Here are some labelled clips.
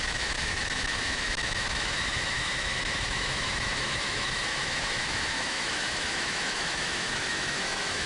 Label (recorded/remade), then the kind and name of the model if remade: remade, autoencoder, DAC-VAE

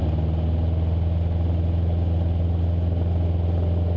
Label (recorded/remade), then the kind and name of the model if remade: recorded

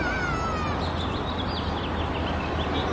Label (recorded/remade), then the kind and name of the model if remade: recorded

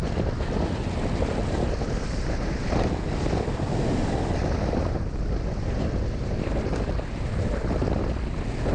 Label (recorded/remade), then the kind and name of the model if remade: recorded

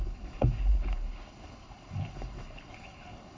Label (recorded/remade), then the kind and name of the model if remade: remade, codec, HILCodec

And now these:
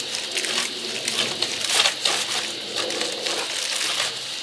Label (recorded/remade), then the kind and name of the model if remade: recorded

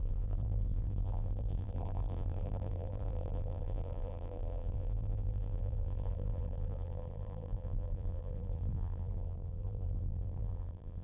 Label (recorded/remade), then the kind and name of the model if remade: remade, vocoder, BigVGAN v2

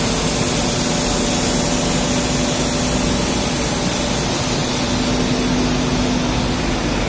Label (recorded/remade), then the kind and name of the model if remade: recorded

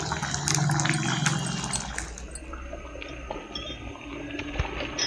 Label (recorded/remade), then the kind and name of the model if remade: recorded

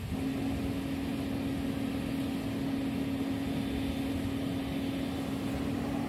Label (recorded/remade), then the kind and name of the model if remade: recorded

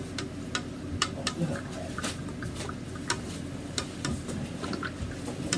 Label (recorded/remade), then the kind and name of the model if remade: recorded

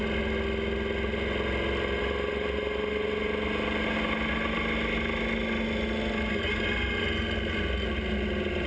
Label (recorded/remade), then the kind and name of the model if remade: recorded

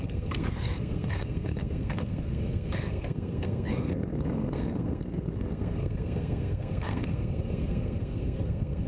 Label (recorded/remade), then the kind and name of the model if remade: remade, codec, SNAC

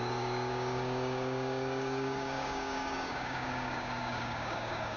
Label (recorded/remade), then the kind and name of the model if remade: remade, codec, DAC